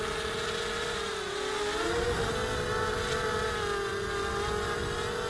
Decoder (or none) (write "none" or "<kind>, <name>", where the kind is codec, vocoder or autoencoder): none